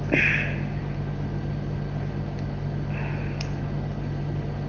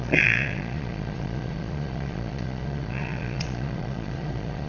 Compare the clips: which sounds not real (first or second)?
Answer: second